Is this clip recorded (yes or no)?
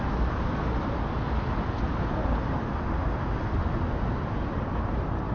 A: yes